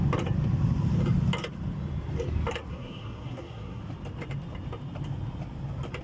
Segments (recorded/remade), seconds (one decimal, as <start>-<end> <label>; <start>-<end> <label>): 0.0-2.7 recorded; 2.7-3.8 remade; 3.8-6.0 recorded

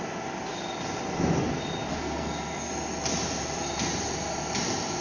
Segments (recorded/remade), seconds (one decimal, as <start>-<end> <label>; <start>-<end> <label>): 0.0-1.9 recorded; 1.9-2.7 remade; 2.7-5.0 recorded

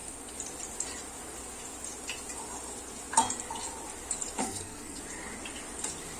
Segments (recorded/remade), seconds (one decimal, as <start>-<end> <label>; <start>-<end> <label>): 0.0-4.4 recorded; 4.4-5.0 remade; 5.0-6.2 recorded

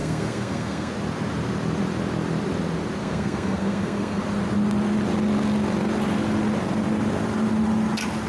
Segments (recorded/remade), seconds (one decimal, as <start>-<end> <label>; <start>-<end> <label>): 0.0-0.9 remade; 0.9-3.0 recorded; 3.0-4.2 remade; 4.2-8.3 recorded

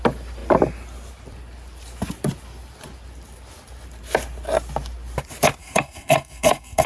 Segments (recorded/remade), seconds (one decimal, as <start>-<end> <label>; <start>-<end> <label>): 0.0-5.6 recorded; 5.6-6.9 remade

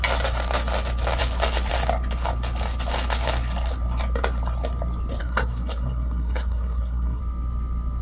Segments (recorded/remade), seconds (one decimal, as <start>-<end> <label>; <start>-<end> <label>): 0.0-5.2 recorded; 5.2-7.2 remade; 7.2-8.0 recorded

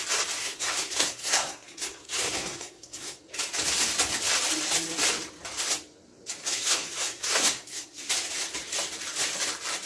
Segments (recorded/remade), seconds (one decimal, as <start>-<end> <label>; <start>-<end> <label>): 0.0-0.4 recorded; 0.4-3.2 remade; 3.2-6.4 recorded; 6.4-8.1 remade; 8.1-9.9 recorded

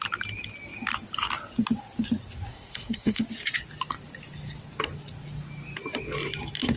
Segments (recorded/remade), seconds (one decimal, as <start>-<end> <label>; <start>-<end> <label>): 0.0-2.5 recorded; 2.5-3.2 remade; 3.2-6.8 recorded